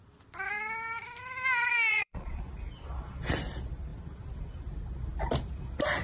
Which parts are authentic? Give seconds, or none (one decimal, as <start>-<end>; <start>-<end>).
0.0-1.9; 2.4-6.0